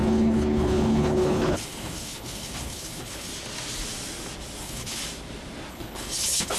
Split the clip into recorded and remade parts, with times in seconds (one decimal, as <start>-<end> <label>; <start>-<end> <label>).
0.0-3.3 remade; 3.3-4.6 recorded; 4.6-5.0 remade; 5.0-5.7 recorded; 5.7-6.6 remade